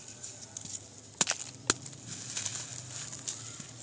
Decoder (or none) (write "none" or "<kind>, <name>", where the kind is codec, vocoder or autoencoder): none